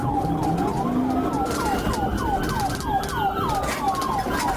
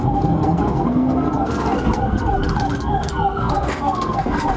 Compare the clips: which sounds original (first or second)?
first